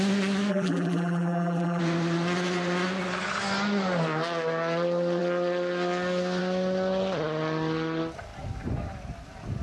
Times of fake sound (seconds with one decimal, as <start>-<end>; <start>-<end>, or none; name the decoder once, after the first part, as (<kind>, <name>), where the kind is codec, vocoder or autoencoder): 0.5-1.8 (vocoder, BigVGAN v2)